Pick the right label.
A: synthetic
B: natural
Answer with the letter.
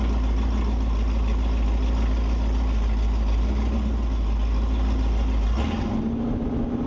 B